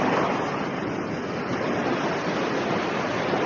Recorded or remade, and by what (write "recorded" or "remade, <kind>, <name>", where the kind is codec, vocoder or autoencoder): recorded